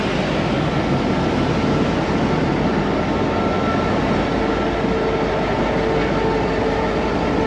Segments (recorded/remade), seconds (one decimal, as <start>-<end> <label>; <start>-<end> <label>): 0.0-7.5 recorded